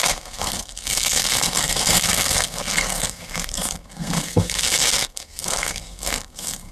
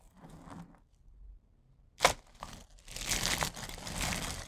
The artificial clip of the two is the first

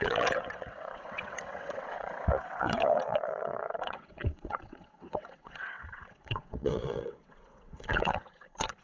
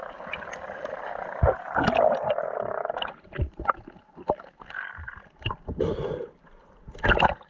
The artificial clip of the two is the first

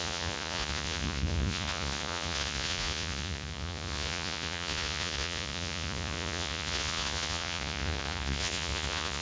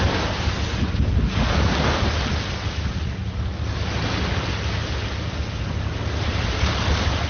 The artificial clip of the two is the first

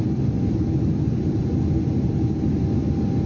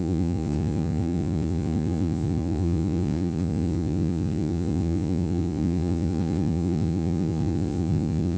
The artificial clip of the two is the second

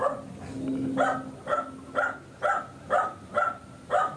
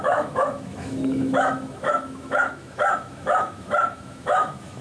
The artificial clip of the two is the second